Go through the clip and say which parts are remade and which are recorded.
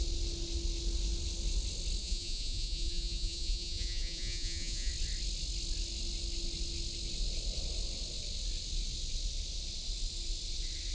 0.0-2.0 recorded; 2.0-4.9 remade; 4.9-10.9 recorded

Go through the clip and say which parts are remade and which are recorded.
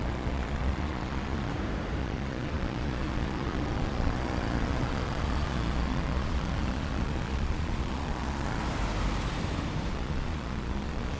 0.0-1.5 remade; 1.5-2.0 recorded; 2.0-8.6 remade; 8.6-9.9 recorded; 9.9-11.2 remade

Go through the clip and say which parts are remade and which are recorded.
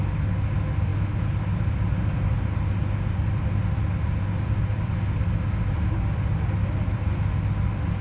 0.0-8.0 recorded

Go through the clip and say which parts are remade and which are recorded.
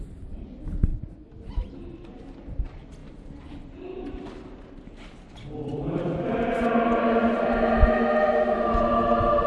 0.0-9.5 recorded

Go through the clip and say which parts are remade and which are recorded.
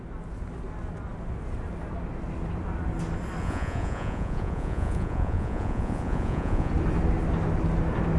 0.0-3.4 recorded; 3.4-6.7 remade; 6.7-8.2 recorded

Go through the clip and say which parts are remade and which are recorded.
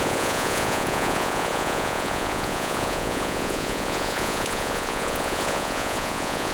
0.0-6.5 remade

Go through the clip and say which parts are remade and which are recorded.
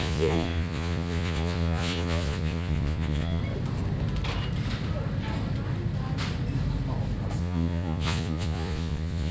0.0-3.4 remade; 3.4-7.4 recorded; 7.4-9.3 remade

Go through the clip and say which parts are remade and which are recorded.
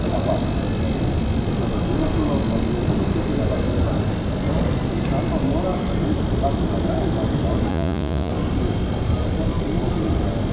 0.0-7.7 recorded; 7.7-8.3 remade; 8.3-10.5 recorded